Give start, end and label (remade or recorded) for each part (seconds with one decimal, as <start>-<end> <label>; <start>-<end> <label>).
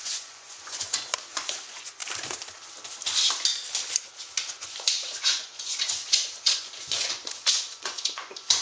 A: 0.0-2.0 remade; 2.0-4.6 recorded; 4.6-8.6 remade